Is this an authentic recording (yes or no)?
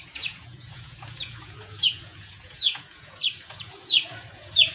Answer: no